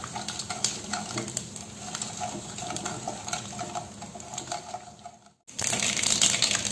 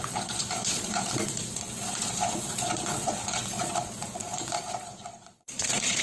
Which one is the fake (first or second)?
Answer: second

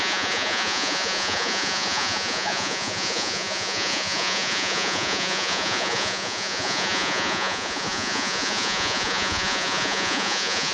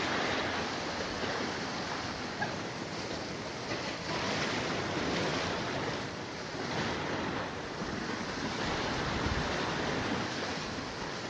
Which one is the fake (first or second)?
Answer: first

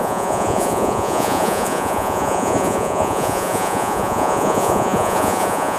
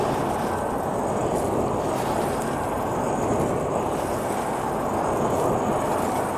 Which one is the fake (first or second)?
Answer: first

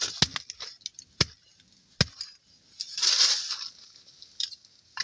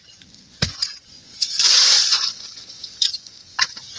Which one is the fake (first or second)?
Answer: second